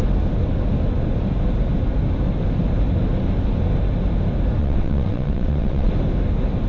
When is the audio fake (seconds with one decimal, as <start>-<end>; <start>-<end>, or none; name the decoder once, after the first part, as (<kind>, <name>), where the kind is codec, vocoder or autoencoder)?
4.6-5.9 (vocoder, WaveNeXt)

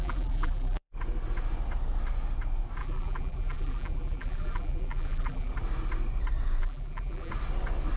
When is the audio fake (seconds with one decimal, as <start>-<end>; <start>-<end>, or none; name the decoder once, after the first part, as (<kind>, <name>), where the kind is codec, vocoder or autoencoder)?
0.0-0.9 (vocoder, BigVGAN v2); 2.8-5.5; 6.6-7.3

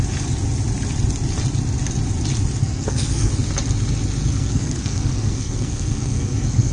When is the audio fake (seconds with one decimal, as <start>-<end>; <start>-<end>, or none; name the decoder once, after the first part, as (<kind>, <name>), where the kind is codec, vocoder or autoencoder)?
2.6-3.3 (codec, SNAC); 4.3-6.7

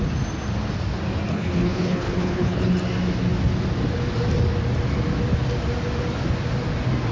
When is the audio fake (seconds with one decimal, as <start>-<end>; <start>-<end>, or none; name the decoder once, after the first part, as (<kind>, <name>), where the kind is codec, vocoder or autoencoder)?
1.3-2.7 (codec, HILCodec)

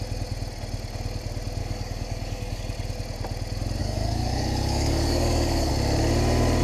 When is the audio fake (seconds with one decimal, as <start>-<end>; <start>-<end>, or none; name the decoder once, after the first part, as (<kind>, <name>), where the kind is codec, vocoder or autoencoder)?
1.6-2.6 (codec, DAC); 3.8-5.7

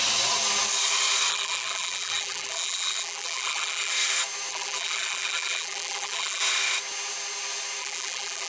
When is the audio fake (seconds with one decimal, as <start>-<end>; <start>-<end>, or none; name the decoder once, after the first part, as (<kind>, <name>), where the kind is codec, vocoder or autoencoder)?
1.3-3.9 (vocoder, BigVGAN v2); 4.5-6.4; 7.8-8.5

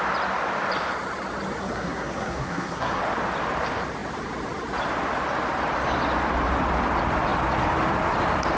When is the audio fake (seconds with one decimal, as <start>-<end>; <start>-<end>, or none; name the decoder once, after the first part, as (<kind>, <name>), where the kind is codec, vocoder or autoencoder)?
1.6-3.0 (codec, SNAC)